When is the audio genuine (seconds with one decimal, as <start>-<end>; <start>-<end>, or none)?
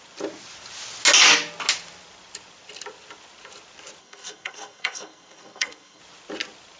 0.0-4.0; 6.0-6.8